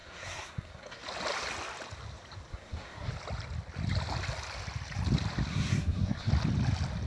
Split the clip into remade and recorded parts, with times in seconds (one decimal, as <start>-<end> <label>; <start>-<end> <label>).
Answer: 0.0-1.0 remade; 1.0-2.5 recorded; 2.5-3.1 remade; 3.1-5.5 recorded; 5.5-6.3 remade; 6.3-7.1 recorded